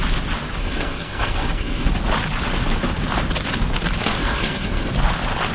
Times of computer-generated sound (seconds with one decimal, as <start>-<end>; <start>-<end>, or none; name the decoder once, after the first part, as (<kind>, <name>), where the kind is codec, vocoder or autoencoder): 0.6-1.9 (codec, SNAC); 4.2-4.9